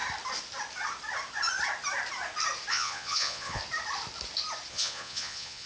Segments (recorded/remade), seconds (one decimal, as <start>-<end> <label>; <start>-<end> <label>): 0.0-2.7 recorded; 2.7-3.6 remade; 3.6-4.7 recorded; 4.7-5.7 remade